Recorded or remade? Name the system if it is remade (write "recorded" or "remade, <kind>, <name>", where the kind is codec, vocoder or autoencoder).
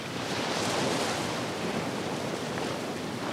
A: recorded